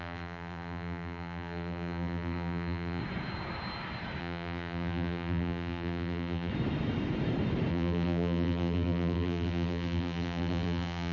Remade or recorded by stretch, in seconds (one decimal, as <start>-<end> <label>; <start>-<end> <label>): 0.0-3.0 remade; 3.0-4.2 recorded; 4.2-6.5 remade; 6.5-7.7 recorded; 7.7-11.1 remade